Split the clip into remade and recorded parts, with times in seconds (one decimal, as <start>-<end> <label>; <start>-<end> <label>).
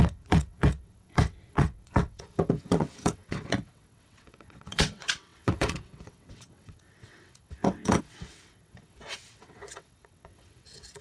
0.0-11.0 remade